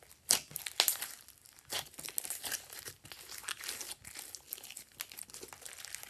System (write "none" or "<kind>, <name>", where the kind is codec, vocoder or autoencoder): none